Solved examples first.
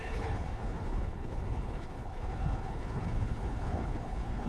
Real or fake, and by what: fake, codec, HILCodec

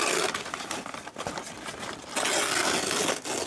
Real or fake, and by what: real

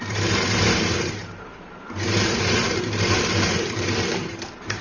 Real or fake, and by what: fake, vocoder, BigVGAN v2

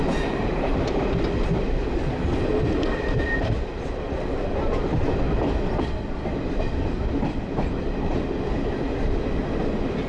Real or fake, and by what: real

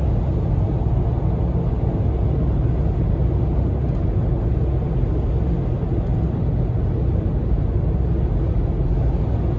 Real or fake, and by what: real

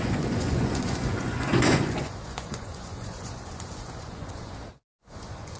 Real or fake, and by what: fake, vocoder, Vocos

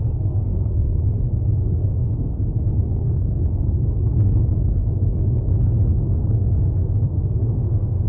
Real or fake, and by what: fake, codec, SNAC